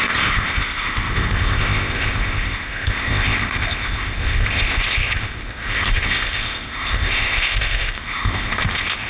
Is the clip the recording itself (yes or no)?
no